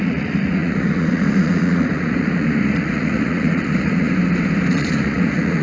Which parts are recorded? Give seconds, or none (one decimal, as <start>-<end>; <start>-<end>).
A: 4.1-4.7